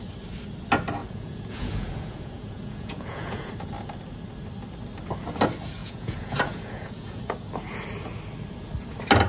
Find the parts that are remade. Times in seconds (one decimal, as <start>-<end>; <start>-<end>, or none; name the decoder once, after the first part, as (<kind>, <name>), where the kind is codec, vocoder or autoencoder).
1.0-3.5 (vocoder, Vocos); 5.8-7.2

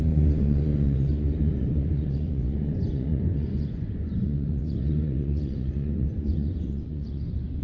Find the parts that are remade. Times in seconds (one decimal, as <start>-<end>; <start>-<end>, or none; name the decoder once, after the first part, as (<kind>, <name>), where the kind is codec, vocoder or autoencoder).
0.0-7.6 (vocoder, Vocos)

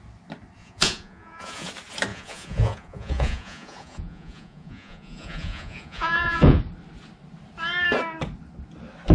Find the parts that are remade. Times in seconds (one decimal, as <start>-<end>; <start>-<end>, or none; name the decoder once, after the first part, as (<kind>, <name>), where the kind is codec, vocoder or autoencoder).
0.6-1.7 (vocoder, Vocos); 2.1-6.6

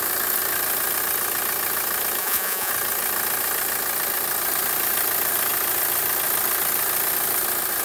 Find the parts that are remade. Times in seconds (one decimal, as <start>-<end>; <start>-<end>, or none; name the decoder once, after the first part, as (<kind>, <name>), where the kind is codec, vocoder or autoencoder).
2.2-2.7 (vocoder, Vocos)